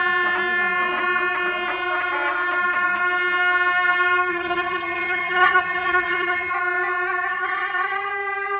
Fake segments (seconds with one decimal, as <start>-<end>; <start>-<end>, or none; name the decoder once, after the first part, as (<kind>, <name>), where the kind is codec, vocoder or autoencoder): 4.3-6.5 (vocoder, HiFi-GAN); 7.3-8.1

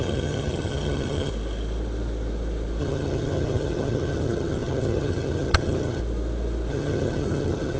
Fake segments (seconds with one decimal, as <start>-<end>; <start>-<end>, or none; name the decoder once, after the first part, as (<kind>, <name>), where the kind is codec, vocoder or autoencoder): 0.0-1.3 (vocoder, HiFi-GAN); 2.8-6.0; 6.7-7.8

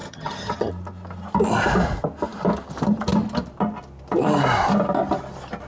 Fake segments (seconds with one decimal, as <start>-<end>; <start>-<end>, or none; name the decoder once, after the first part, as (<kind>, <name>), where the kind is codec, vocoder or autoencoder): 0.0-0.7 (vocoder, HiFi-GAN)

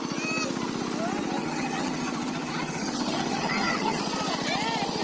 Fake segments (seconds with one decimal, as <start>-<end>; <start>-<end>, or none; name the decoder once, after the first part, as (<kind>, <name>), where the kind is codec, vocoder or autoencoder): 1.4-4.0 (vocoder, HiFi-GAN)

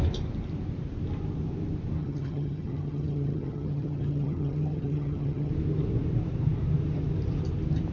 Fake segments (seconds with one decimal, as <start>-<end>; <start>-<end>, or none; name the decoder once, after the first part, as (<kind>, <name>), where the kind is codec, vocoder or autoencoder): 2.0-5.5 (vocoder, HiFi-GAN)

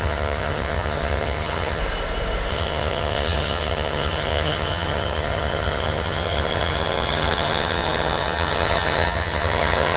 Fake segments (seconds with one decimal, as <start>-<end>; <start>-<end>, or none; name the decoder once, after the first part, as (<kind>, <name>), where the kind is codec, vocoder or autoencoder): 0.0-1.8 (vocoder, HiFi-GAN); 2.5-10.0